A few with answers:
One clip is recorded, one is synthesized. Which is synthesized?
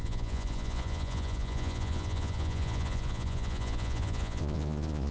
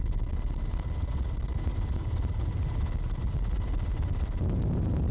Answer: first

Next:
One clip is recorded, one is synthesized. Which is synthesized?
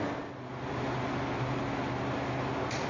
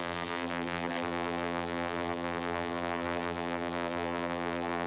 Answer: second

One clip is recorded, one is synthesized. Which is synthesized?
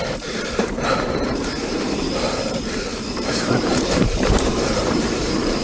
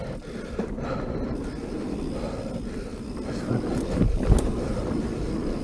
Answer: first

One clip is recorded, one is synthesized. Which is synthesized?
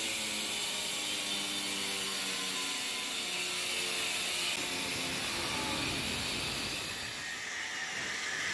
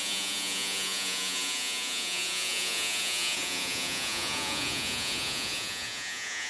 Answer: second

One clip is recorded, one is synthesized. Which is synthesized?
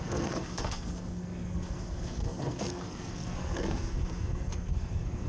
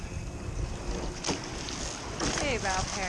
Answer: first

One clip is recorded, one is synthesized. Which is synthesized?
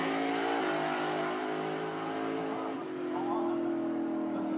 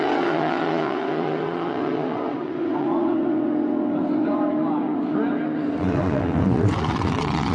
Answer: second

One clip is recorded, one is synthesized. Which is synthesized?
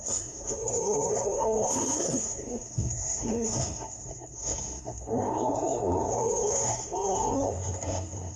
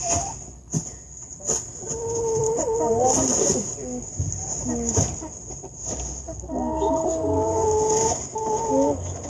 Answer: first